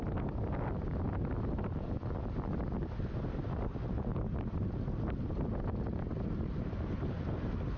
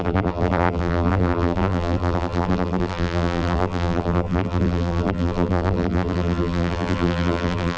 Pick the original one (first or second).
first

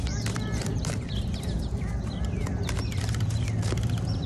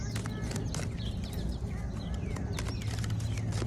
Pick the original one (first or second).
second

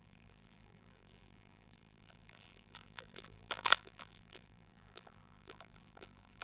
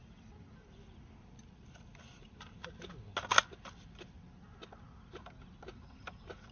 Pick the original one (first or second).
second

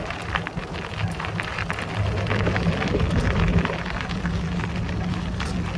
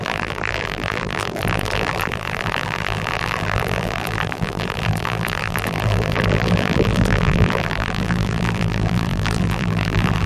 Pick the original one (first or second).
first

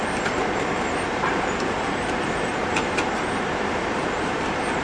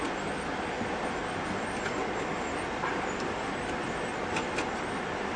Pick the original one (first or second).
second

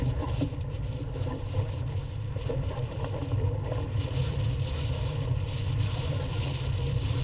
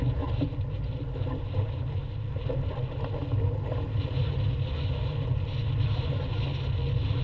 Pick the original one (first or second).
second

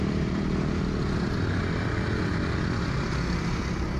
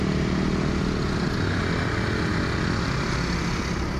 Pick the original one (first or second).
second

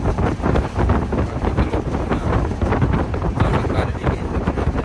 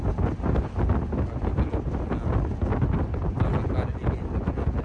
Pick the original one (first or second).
second